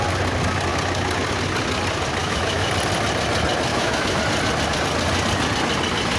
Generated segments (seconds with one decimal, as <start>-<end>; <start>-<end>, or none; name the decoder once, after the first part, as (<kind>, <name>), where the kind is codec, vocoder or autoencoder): 2.2-2.7 (autoencoder, DAC-VAE); 3.7-4.2